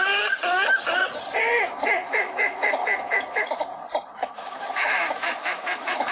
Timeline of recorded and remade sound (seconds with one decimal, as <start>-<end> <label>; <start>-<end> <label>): 0.0-2.0 recorded; 2.0-3.6 remade; 3.6-4.2 recorded; 4.2-6.1 remade